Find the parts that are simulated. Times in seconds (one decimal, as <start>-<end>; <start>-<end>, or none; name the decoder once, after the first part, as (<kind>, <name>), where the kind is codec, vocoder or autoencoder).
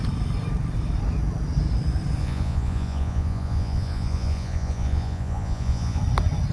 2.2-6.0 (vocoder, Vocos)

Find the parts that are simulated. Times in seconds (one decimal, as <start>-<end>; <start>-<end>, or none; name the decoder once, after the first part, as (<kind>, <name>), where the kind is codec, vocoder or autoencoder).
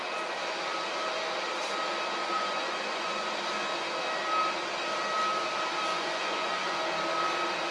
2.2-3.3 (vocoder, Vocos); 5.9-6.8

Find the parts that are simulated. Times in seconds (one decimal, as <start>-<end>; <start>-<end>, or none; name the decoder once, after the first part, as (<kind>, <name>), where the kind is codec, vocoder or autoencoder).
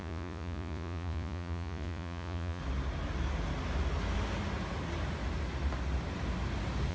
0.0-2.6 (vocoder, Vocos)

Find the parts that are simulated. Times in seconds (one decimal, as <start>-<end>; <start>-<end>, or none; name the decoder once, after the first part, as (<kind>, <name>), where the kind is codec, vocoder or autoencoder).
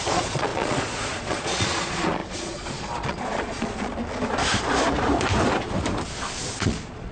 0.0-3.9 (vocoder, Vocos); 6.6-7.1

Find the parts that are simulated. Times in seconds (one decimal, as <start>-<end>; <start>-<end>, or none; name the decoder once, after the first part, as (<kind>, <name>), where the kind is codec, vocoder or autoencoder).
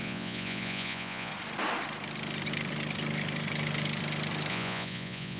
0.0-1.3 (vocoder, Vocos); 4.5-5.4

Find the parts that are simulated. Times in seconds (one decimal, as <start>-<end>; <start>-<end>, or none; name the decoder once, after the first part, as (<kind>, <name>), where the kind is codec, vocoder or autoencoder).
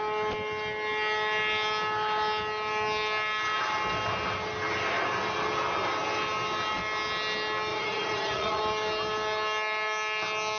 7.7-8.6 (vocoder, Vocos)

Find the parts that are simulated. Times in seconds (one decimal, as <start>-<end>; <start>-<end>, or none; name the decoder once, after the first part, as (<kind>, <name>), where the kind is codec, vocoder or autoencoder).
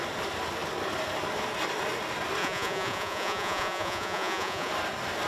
2.4-4.7 (vocoder, Vocos)